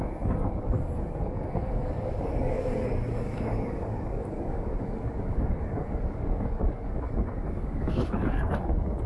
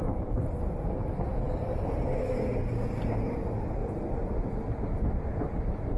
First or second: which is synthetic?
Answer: first